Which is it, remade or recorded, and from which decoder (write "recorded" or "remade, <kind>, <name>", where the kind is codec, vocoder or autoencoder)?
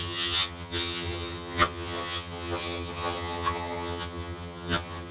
remade, vocoder, HiFi-GAN